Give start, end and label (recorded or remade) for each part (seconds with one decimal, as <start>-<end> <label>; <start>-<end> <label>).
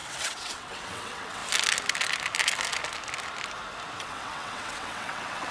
0.0-1.4 remade; 1.4-4.0 recorded; 4.0-5.5 remade